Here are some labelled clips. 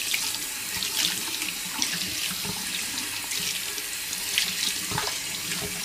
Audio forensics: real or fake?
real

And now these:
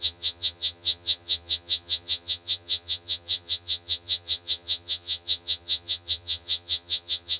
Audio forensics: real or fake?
fake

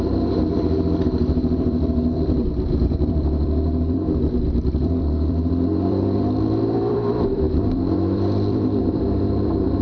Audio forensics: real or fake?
fake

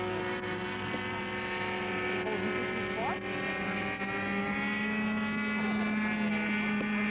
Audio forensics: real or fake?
real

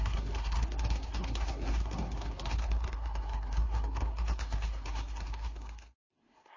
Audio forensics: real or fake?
fake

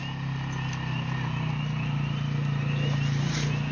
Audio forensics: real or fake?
real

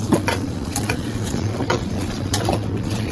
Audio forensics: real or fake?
fake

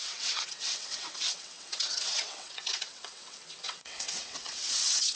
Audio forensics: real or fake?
fake